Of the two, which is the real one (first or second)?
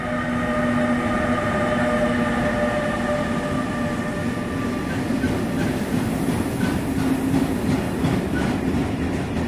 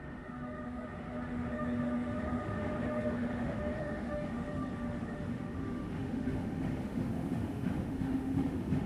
first